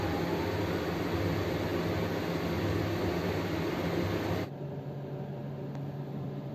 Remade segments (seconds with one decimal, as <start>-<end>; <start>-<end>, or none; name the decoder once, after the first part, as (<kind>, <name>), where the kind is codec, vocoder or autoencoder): none